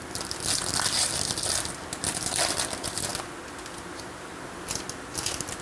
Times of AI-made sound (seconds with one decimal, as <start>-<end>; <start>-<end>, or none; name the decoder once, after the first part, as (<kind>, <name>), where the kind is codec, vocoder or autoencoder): none